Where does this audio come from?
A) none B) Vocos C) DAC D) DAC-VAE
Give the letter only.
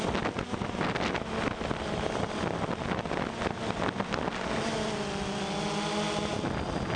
A